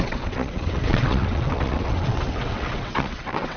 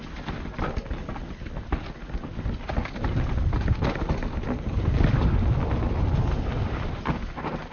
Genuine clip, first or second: second